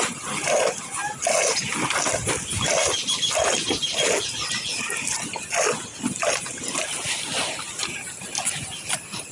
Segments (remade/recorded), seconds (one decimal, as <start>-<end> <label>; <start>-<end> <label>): 0.0-9.3 recorded